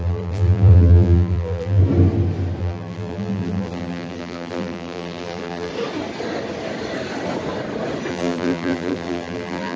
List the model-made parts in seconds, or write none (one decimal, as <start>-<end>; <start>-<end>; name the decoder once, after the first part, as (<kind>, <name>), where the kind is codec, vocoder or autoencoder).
0.0-1.8 (vocoder, BigVGAN v2); 2.6-5.7; 8.1-9.8